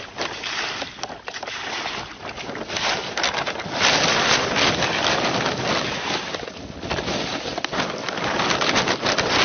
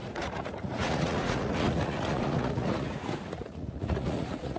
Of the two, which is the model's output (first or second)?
second